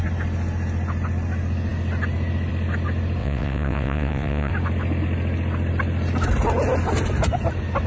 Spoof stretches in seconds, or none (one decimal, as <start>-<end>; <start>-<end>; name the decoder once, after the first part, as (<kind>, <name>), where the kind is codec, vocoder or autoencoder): 3.2-4.5 (vocoder, WaveNeXt)